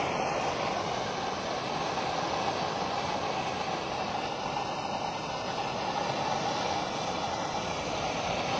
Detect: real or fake real